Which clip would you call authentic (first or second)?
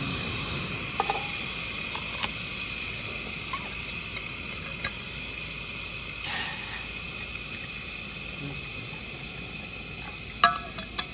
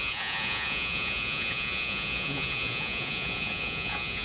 first